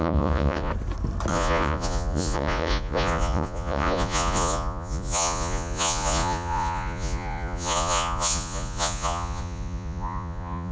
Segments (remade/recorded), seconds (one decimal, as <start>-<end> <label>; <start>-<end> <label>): 0.0-0.7 remade; 0.7-1.3 recorded; 1.3-10.7 remade